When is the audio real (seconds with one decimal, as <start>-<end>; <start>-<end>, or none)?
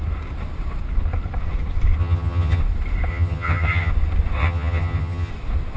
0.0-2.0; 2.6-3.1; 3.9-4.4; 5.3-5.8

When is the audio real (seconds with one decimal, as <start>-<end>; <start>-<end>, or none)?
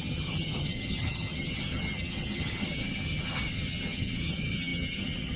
none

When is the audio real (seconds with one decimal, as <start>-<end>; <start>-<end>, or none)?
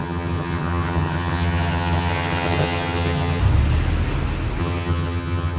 3.4-4.6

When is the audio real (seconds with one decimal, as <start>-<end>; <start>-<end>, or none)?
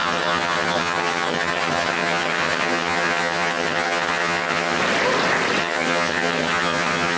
4.8-5.6